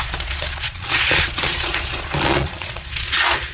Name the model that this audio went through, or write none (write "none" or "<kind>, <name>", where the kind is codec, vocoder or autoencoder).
vocoder, Vocos